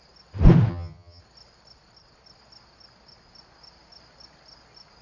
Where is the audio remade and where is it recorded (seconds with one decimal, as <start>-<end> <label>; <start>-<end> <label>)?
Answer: 0.0-0.7 recorded; 0.7-1.2 remade; 1.2-5.0 recorded